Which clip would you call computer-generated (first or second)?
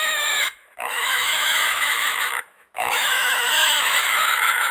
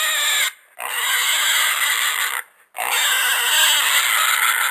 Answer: first